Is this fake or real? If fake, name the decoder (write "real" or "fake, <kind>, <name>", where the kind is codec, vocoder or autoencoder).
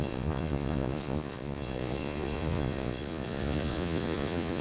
fake, vocoder, Vocos